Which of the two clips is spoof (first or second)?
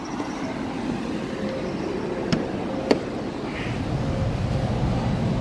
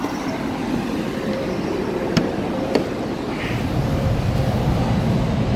second